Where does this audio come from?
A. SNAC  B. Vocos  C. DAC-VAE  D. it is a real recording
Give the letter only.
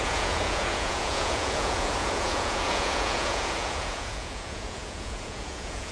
B